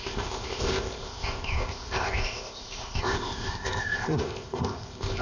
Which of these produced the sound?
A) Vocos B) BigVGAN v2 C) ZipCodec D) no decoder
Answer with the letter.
C